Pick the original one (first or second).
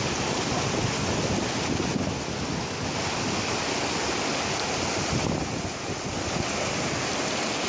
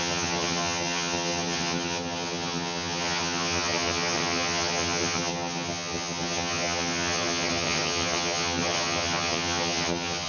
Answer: first